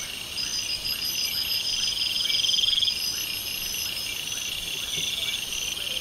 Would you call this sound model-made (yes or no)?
no